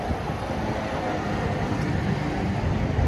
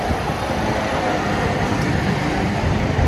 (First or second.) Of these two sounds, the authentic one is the first